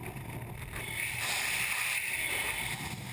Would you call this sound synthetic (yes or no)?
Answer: no